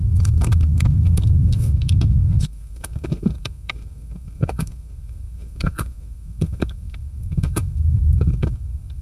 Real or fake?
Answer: fake